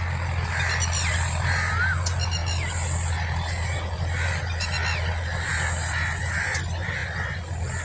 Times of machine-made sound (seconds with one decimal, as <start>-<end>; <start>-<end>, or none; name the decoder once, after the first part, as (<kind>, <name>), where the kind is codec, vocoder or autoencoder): none